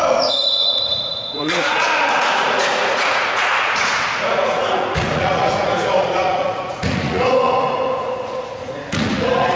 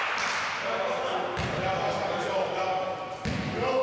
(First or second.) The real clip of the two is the second